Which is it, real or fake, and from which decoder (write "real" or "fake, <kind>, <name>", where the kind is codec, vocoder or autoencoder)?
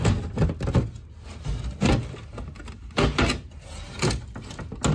real